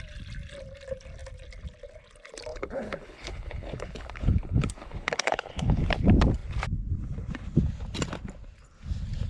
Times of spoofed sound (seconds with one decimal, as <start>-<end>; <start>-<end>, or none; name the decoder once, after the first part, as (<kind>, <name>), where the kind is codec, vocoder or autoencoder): 2.5-5.8 (codec, HILCodec)